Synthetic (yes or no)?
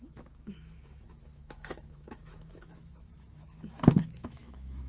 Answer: yes